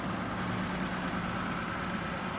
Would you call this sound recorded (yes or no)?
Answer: yes